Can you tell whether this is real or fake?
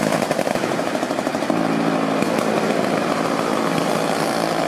fake